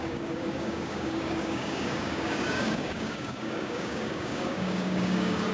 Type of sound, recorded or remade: remade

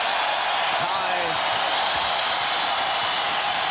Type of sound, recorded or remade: recorded